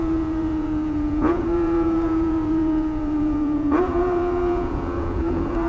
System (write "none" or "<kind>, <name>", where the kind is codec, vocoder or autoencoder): vocoder, Vocos